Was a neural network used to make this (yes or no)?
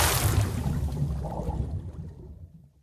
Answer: no